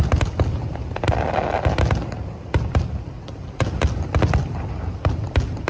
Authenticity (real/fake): real